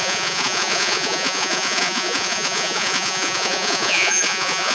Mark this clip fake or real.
fake